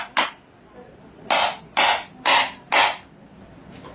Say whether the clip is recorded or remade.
recorded